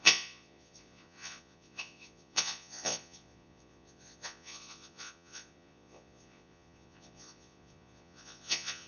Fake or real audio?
fake